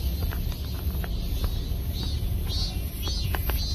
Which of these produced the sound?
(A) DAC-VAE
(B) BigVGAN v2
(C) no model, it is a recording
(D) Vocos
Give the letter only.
C